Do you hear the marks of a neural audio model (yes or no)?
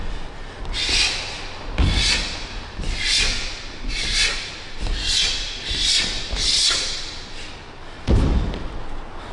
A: no